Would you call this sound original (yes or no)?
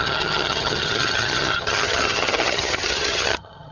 no